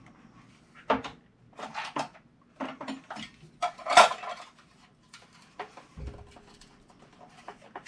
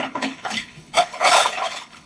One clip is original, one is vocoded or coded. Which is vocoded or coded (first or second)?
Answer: second